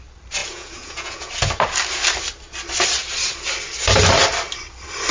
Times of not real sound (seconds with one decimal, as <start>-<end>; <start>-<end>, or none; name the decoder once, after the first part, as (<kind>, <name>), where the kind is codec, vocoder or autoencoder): 0.4-1.3 (vocoder, Vocos)